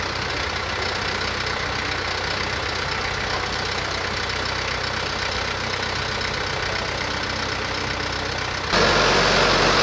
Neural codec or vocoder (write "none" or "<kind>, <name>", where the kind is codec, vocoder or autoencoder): none